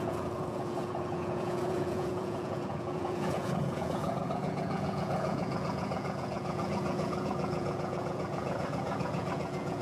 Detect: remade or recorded remade